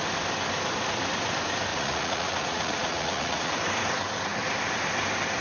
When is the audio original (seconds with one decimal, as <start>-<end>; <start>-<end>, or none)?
0.0-1.7; 3.5-5.4